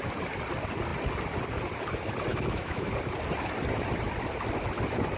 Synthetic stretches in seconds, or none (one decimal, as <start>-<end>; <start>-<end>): 2.3-2.9